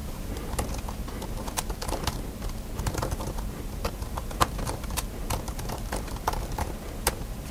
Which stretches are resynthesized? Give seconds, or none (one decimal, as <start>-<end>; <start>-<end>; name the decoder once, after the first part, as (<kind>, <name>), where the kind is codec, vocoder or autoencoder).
0.0-0.5 (vocoder, BigVGAN v2); 3.0-6.2